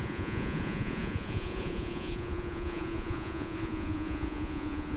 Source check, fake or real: fake